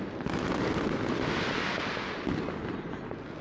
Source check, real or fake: real